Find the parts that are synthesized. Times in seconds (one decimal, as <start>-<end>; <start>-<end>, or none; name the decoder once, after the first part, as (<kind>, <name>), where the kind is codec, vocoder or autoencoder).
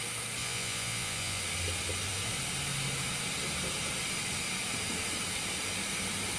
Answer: 0.4-1.4 (vocoder, Vocos)